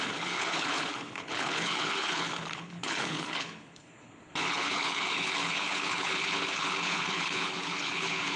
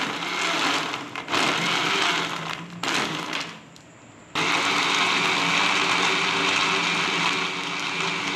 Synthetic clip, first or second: first